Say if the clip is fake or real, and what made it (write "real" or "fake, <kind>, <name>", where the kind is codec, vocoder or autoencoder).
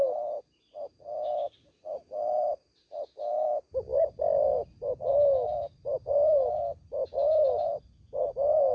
real